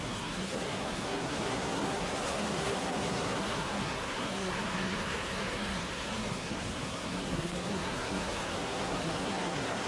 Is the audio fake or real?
fake